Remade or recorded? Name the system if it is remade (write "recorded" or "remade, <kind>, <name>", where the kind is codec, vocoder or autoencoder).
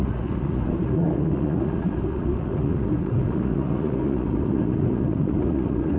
remade, vocoder, Vocos